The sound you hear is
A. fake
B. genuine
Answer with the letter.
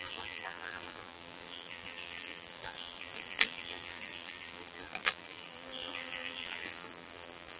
A